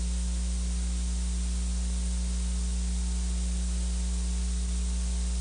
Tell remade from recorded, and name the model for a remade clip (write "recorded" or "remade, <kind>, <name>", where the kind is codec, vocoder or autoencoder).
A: recorded